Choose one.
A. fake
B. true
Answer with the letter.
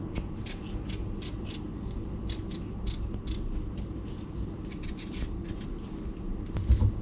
B